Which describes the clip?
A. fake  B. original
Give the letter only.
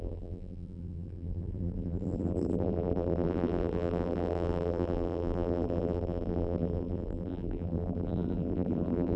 A